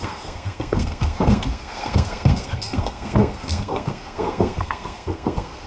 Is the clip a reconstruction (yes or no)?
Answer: yes